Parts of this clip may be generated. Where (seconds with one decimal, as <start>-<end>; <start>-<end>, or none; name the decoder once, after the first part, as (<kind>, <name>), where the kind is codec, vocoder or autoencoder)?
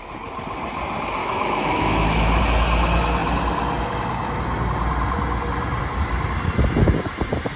1.2-2.4 (autoencoder, DAC-VAE)